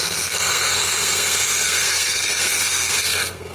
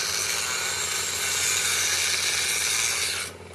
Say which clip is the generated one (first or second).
first